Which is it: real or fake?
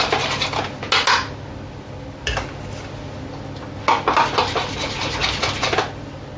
real